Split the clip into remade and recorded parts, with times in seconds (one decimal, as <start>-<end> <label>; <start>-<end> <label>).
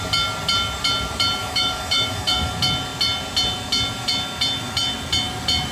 0.0-1.4 recorded; 1.4-2.5 remade; 2.5-5.7 recorded